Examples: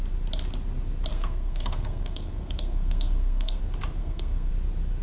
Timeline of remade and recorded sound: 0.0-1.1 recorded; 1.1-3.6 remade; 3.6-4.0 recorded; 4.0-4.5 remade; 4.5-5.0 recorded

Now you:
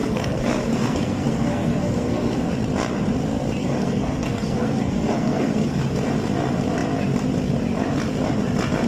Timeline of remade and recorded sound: 0.0-2.5 remade; 2.5-3.6 recorded; 3.6-5.8 remade; 5.8-8.9 recorded

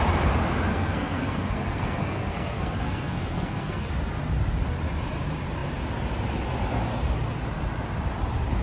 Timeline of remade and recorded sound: 0.0-0.7 recorded; 0.7-3.9 remade; 3.9-8.6 recorded

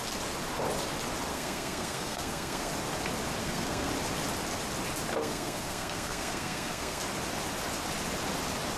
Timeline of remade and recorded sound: 0.0-1.3 recorded; 1.3-2.7 remade; 2.7-3.4 recorded; 3.4-3.9 remade; 3.9-5.2 recorded; 5.2-7.0 remade; 7.0-8.8 recorded